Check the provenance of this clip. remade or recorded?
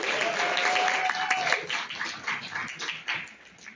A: recorded